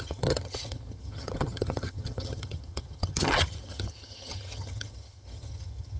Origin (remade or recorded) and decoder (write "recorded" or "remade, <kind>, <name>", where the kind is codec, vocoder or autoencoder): remade, vocoder, HiFi-GAN